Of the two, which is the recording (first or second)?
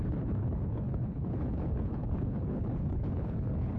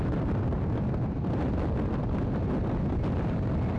second